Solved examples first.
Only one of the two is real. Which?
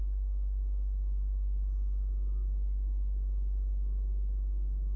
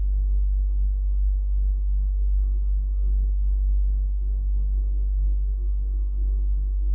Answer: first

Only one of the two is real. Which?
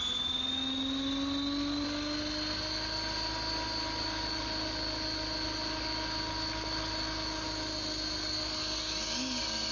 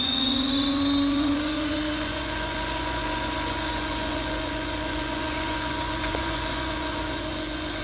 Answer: first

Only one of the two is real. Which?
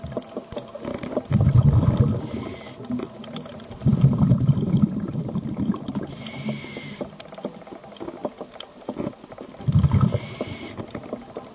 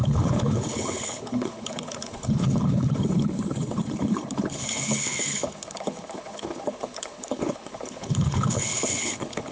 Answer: first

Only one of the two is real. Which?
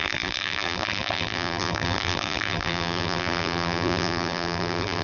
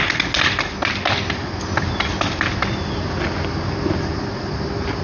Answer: second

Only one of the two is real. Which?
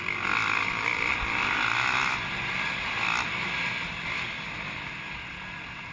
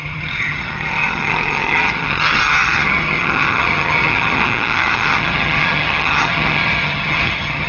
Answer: first